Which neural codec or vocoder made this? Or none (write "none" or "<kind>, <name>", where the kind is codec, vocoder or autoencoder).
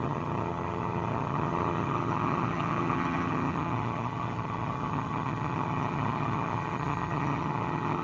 vocoder, HiFi-GAN